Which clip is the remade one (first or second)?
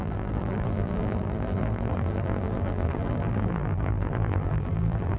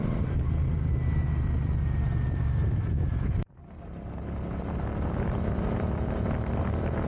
first